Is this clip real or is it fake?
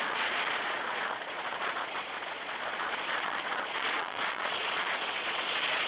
fake